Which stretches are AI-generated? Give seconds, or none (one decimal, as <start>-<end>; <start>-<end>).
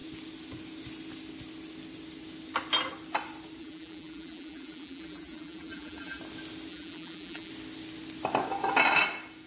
3.6-6.2; 6.7-7.5